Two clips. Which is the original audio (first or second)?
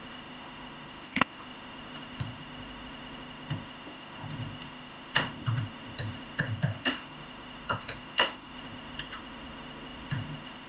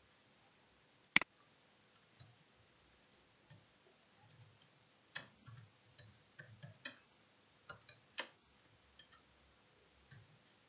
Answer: second